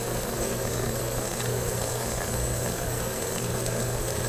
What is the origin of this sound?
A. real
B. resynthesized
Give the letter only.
B